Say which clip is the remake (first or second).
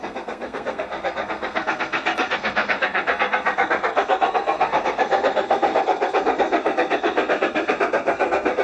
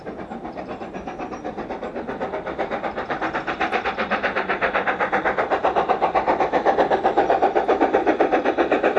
first